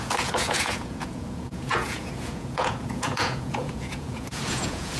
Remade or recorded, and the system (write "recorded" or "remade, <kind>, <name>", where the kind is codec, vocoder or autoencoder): remade, vocoder, Vocos